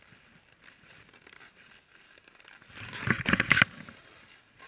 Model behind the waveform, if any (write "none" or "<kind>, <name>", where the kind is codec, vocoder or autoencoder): none